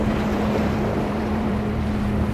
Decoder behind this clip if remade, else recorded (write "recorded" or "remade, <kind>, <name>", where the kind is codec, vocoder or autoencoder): remade, vocoder, BigVGAN v2